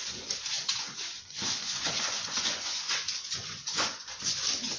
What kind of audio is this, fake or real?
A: fake